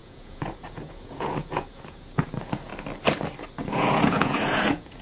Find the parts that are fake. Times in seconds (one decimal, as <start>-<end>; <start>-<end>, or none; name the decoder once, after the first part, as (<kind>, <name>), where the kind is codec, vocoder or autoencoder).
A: 0.0-2.7 (vocoder, Vocos); 3.6-5.0